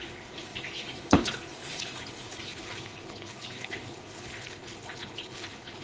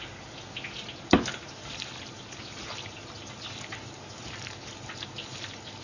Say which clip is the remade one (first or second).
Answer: first